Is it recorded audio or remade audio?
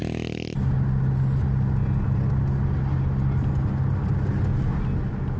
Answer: recorded